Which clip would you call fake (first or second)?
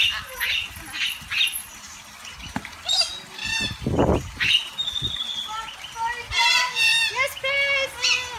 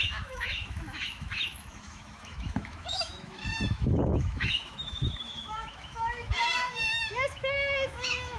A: second